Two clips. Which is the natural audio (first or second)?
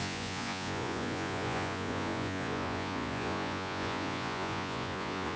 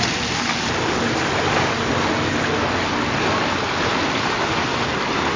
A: second